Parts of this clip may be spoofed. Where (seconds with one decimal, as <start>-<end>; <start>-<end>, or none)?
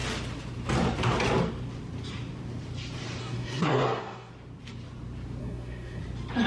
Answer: 3.2-4.3; 5.4-6.0